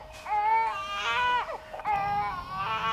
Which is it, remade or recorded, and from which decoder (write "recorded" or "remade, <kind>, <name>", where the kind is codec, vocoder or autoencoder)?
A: recorded